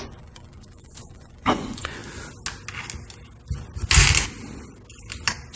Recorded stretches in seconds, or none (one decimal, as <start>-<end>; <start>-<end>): 2.0-5.6

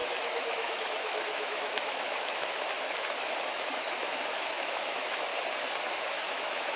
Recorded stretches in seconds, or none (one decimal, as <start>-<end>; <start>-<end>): 5.3-5.9